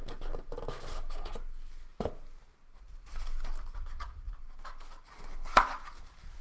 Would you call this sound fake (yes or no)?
no